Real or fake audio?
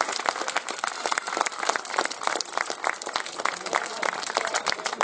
real